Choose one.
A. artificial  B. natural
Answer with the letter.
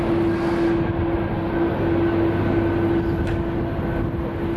B